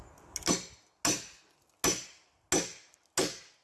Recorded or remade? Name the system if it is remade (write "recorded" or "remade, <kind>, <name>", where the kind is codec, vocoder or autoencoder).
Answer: recorded